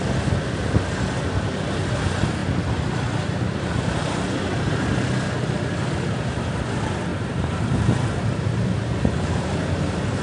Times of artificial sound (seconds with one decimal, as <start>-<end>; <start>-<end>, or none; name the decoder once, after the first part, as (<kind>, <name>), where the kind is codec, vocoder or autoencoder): 7.1-10.2 (vocoder, BigVGAN v2)